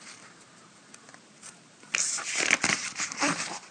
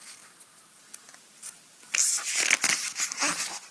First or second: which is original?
second